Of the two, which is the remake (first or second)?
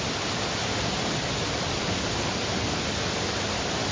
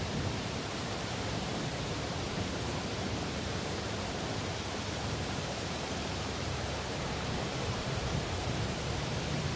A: second